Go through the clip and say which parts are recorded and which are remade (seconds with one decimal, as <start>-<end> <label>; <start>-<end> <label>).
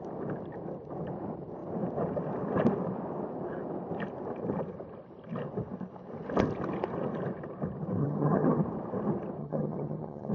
0.0-8.0 recorded; 8.0-8.6 remade; 8.6-9.4 recorded; 9.4-10.3 remade